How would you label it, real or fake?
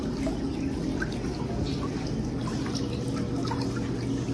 real